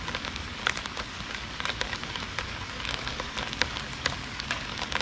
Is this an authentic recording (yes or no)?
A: no